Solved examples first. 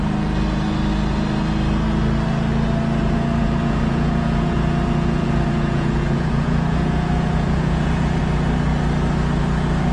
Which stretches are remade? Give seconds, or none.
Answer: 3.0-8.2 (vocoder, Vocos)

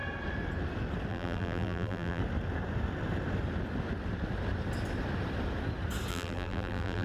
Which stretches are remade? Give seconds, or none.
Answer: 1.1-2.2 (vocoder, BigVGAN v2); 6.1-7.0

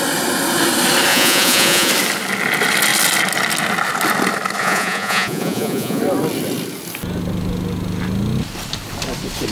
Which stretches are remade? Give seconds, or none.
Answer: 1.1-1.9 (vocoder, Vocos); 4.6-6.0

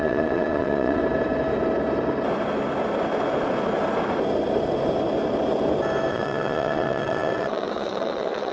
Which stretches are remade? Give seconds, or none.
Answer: 0.0-1.0 (vocoder, Vocos); 6.1-8.5

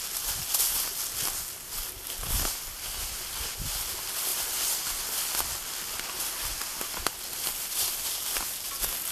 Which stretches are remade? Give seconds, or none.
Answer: none

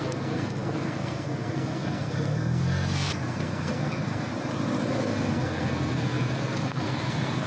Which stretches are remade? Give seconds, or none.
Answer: 0.0-4.3 (codec, SNAC); 4.9-7.5

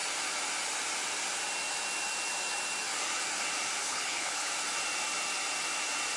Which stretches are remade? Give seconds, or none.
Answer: 3.8-4.5 (codec, HILCodec)